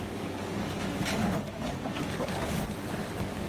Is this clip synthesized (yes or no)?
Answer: yes